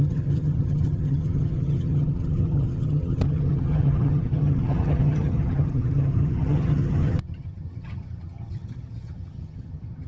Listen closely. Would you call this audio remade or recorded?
remade